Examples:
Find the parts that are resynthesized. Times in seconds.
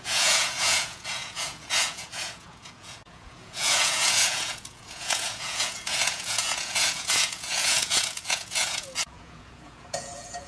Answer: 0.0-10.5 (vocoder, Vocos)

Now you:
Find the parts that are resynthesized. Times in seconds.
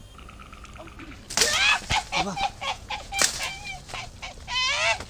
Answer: 2.6-3.1 (vocoder, Vocos)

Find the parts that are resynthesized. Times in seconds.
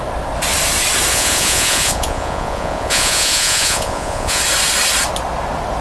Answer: 1.1-4.4 (vocoder, Vocos)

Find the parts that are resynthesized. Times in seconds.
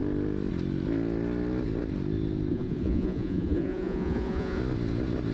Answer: 2.5-4.6 (vocoder, Vocos)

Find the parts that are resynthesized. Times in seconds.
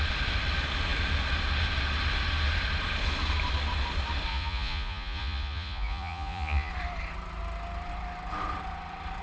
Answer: 4.3-6.7 (vocoder, Vocos)